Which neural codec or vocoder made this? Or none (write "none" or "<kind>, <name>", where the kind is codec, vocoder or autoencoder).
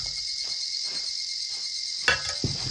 none